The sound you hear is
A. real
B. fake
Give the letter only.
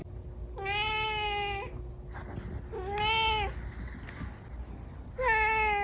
A